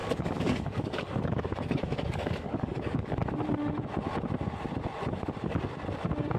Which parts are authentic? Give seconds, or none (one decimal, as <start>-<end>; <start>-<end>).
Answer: 3.2-6.4